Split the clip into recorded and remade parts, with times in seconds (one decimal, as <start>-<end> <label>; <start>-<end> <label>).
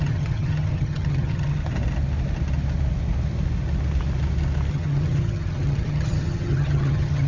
0.0-1.6 remade; 1.6-4.7 recorded; 4.7-7.3 remade